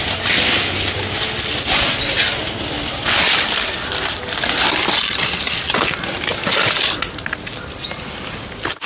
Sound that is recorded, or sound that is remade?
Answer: recorded